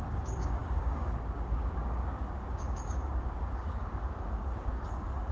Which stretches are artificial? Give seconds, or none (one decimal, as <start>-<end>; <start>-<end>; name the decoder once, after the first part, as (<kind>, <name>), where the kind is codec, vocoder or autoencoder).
0.0-5.3 (codec, DAC)